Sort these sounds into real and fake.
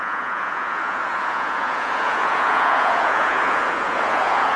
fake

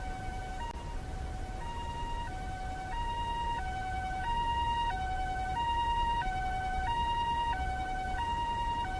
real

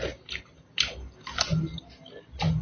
real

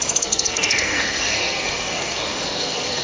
fake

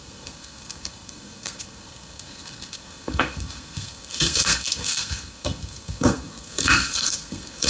fake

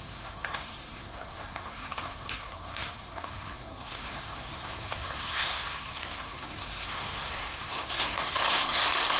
fake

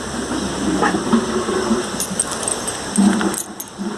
real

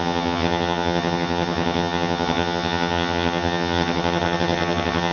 fake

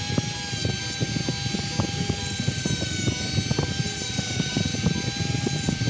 real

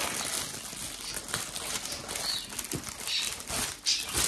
real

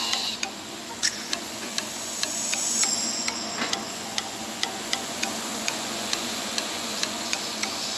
fake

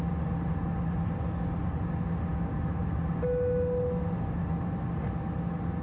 real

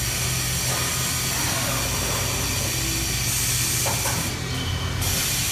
real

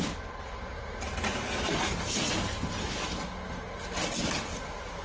real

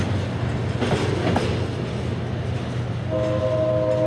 real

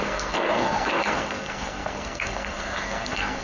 fake